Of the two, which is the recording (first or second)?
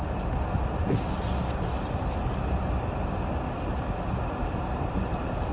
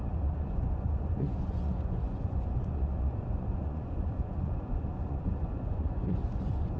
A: first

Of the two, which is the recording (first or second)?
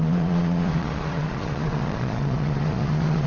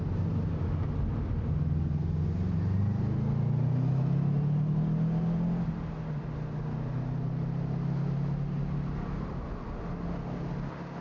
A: second